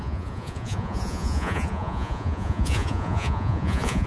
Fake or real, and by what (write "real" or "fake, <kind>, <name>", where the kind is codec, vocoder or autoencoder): fake, vocoder, Vocos